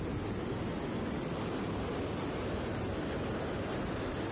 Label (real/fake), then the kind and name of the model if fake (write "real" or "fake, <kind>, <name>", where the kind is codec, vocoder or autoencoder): real